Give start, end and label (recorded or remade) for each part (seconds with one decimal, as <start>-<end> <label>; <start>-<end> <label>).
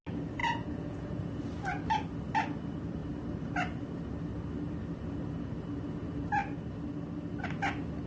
0.0-0.4 recorded; 0.4-1.4 remade; 1.4-8.1 recorded